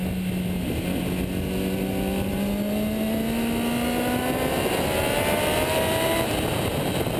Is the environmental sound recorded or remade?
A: recorded